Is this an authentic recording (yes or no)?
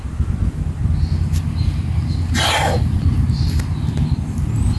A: yes